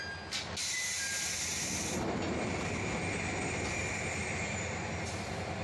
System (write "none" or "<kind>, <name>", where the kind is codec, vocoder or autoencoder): none